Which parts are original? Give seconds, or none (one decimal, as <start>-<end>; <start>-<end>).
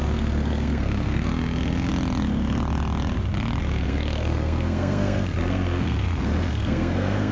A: 1.9-3.6